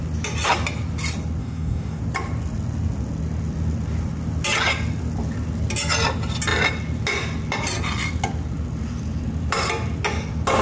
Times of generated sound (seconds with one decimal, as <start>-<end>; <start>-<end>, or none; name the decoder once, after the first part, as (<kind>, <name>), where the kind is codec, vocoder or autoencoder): 1.4-2.0 (codec, DAC)